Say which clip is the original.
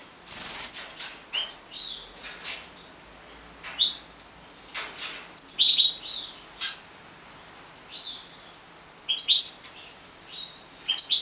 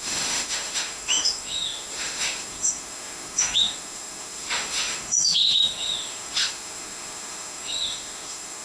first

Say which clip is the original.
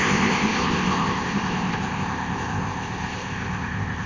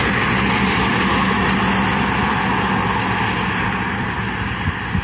second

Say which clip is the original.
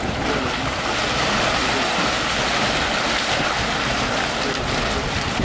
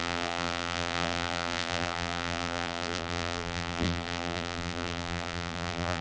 first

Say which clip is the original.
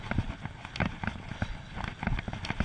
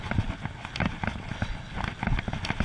second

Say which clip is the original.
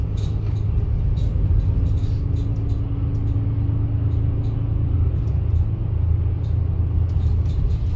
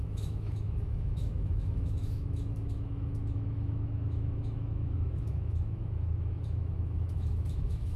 first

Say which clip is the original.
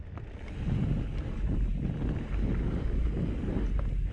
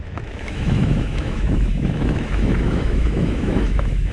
first